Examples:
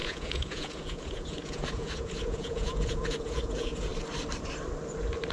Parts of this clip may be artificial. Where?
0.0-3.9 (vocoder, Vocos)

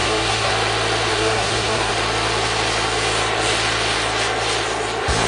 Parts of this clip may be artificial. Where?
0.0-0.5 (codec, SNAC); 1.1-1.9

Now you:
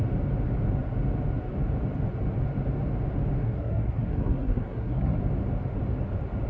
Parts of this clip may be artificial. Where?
3.4-5.2 (codec, SNAC)

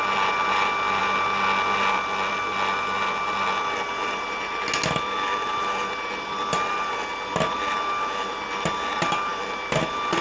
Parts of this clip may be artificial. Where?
none

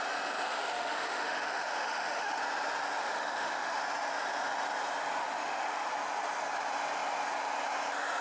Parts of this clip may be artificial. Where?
0.5-2.4 (autoencoder, DAC-VAE); 3.0-3.8; 5.2-5.9

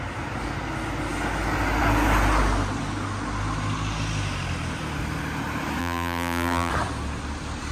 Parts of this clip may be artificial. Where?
5.8-6.7 (vocoder, BigVGAN v2)